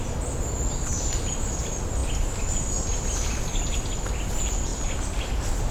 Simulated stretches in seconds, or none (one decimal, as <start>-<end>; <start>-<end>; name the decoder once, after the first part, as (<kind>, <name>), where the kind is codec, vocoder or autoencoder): none